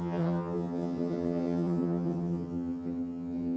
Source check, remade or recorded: remade